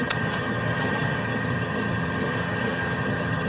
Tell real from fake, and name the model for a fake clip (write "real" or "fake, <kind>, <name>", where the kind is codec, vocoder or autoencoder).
fake, vocoder, HiFi-GAN